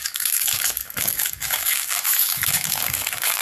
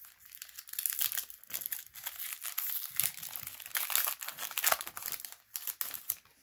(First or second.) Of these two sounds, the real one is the second